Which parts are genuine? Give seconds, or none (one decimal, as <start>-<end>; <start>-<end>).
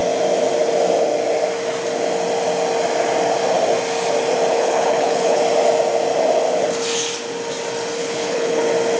0.0-4.5; 5.4-8.0; 8.6-9.0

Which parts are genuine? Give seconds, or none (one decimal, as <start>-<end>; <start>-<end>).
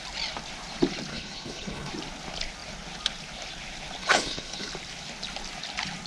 0.0-1.1; 1.9-4.0; 4.7-6.1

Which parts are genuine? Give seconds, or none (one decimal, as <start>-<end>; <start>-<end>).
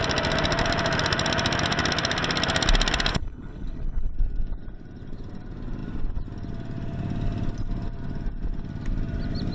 0.0-3.1; 4.1-9.5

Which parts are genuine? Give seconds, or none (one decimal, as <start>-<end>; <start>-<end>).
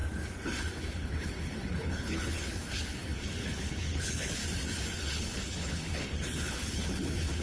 0.0-0.6; 4.4-5.0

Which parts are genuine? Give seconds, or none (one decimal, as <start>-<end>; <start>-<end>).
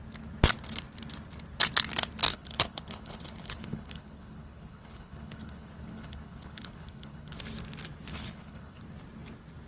0.0-2.3; 7.4-8.1; 8.8-9.7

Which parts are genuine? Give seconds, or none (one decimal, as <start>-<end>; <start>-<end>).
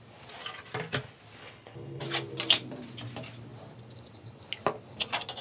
0.0-1.4; 2.0-5.4